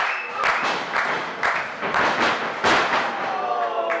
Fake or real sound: real